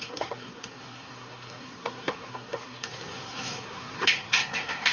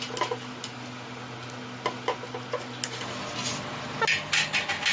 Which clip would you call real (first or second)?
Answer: second